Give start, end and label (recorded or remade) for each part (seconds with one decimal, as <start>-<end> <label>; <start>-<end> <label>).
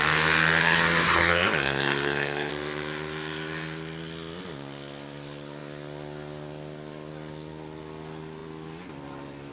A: 0.0-0.6 recorded; 0.6-2.5 remade; 2.5-9.5 recorded